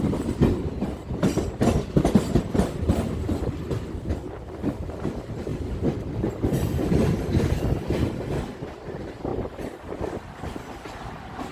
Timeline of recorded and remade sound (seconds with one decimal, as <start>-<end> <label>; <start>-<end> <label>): 0.0-11.5 recorded